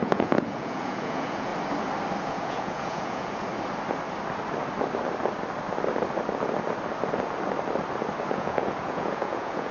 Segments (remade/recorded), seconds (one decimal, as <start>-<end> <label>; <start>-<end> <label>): 0.0-1.5 remade; 1.5-2.2 recorded; 2.2-3.5 remade; 3.5-8.3 recorded; 8.3-9.7 remade